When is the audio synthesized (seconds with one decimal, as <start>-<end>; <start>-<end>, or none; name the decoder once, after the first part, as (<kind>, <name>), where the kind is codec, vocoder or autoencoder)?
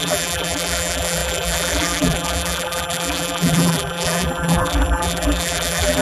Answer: 0.0-6.0 (vocoder, BigVGAN v2)